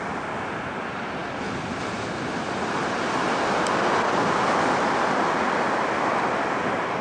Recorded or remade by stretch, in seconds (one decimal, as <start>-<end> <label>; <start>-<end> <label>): 0.0-7.0 recorded